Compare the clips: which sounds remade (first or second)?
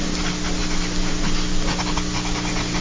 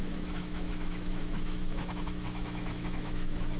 second